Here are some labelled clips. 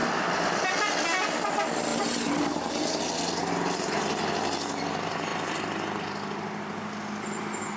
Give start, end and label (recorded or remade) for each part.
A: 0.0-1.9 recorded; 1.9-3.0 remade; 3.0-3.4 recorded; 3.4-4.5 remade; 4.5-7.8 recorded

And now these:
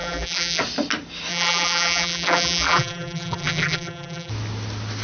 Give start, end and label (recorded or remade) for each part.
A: 0.0-0.6 remade; 0.6-1.3 recorded; 1.3-4.3 remade; 4.3-5.0 recorded

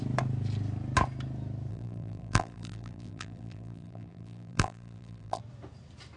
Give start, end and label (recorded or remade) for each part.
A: 0.0-1.7 recorded; 1.7-5.4 remade; 5.4-6.2 recorded

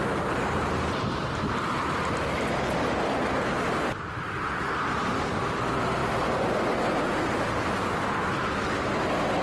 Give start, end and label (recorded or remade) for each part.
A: 0.0-9.4 recorded

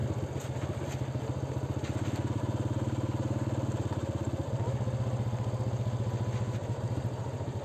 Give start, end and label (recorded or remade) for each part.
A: 0.0-6.6 recorded; 6.6-7.6 remade